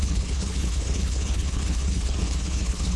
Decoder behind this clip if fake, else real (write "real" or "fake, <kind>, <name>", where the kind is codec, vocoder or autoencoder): fake, codec, HILCodec